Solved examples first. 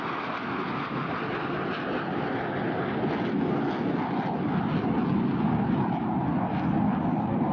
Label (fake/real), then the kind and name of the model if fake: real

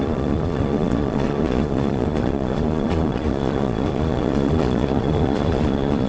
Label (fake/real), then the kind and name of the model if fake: fake, vocoder, Vocos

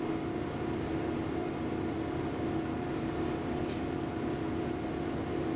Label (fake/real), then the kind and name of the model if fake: real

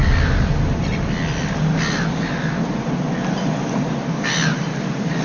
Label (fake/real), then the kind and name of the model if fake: real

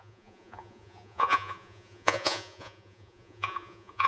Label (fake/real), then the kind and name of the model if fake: fake, vocoder, Vocos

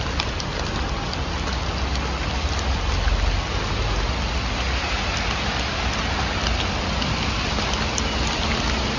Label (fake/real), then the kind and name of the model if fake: real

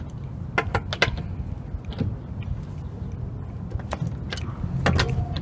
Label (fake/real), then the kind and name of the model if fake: real